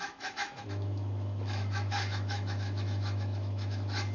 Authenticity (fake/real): fake